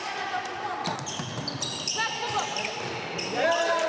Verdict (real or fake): real